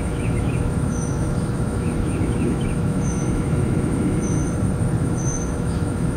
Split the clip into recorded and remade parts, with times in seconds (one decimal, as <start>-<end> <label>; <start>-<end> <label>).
0.0-4.4 remade; 4.4-5.0 recorded; 5.0-6.2 remade